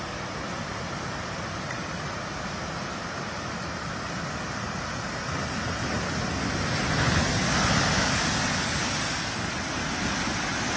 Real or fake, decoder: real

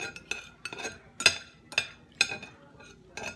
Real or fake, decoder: real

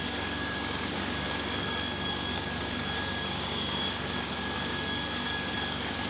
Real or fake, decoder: fake, codec, DAC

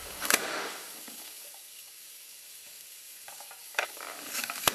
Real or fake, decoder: fake, codec, DAC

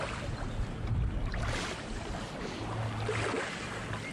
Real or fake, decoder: real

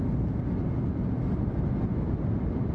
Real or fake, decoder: real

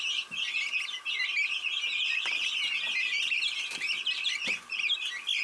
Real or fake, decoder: real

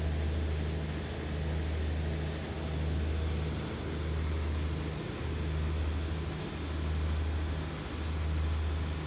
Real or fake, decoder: real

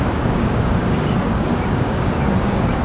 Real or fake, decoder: fake, codec, DAC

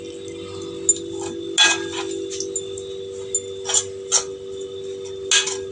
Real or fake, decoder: real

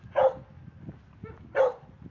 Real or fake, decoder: real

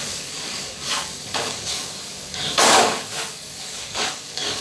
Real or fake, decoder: fake, codec, DAC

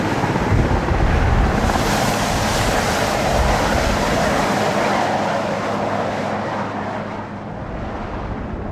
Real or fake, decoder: real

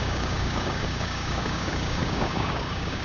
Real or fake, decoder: fake, codec, DAC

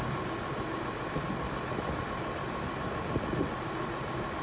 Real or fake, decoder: real